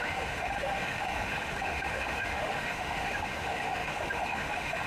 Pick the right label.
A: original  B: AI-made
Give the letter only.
B